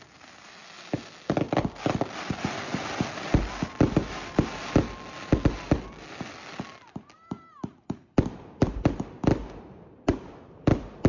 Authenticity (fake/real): real